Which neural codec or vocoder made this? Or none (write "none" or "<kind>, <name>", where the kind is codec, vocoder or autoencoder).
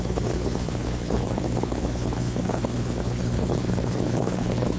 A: codec, HILCodec